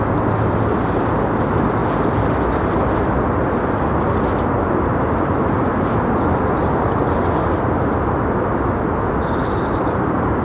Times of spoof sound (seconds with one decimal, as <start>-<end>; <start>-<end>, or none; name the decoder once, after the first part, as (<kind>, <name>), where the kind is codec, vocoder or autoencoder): none